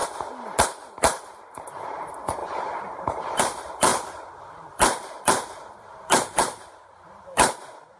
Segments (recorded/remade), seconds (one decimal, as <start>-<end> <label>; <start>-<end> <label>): 0.0-0.6 recorded; 0.6-8.0 remade

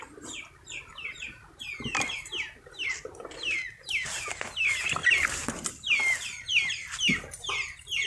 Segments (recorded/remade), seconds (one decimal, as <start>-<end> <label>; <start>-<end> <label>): 0.0-8.1 recorded

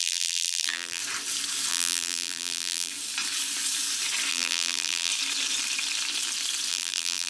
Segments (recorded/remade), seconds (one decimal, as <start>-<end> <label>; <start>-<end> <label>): 0.0-1.0 remade; 1.0-1.7 recorded; 1.7-2.9 remade; 2.9-4.3 recorded; 4.3-5.1 remade; 5.1-6.7 recorded; 6.7-7.3 remade

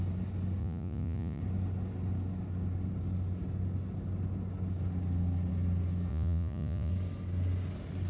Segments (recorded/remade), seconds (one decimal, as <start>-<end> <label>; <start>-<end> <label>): 0.0-0.6 recorded; 0.6-1.4 remade; 1.4-6.1 recorded; 6.1-6.9 remade; 6.9-8.1 recorded

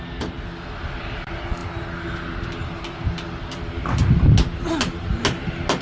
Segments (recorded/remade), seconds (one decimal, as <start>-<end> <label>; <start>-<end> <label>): 0.0-5.8 recorded